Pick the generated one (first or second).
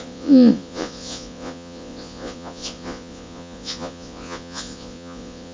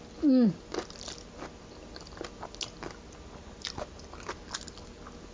first